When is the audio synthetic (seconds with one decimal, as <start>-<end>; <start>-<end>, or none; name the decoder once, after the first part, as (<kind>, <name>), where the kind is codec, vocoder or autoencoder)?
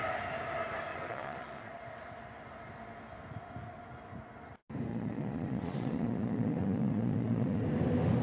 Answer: 0.9-1.7 (vocoder, Vocos); 4.9-7.6